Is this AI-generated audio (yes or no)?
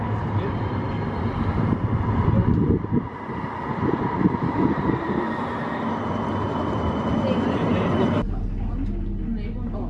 no